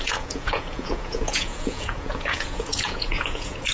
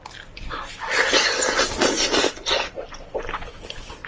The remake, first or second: first